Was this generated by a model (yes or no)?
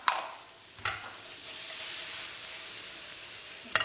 no